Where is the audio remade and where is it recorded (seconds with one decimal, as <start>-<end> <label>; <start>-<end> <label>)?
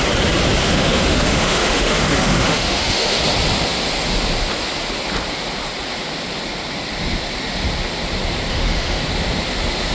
0.0-0.6 recorded; 0.6-3.2 remade; 3.2-8.5 recorded; 8.5-9.0 remade; 9.0-9.9 recorded